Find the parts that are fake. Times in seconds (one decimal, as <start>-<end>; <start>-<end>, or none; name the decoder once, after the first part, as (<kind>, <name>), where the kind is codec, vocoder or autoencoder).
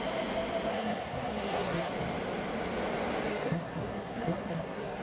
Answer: 0.7-1.9 (codec, SNAC); 3.3-5.0